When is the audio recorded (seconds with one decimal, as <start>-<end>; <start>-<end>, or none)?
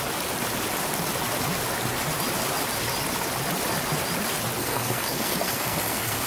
0.0-4.6